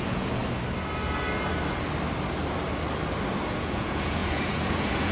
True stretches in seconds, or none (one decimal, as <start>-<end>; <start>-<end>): 0.4-3.5